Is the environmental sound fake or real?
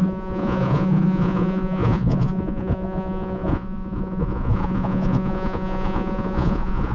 fake